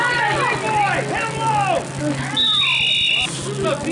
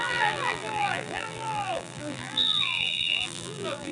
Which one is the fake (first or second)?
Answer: second